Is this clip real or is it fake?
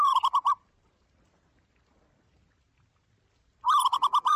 real